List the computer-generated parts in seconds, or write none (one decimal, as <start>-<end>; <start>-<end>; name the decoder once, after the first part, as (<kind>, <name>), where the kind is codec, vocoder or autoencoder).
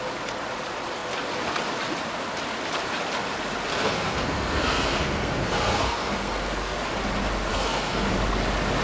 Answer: 3.7-6.8 (codec, SNAC); 7.5-8.1